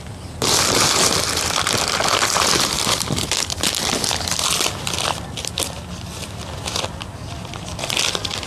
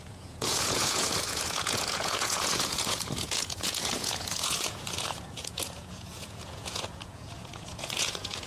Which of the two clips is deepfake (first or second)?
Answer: second